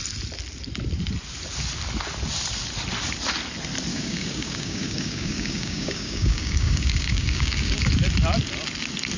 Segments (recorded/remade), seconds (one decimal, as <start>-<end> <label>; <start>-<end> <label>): 0.0-3.9 recorded; 3.9-7.9 remade; 7.9-9.2 recorded